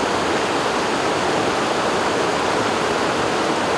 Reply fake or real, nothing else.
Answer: real